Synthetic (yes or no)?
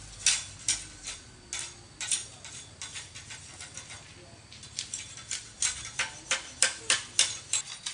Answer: no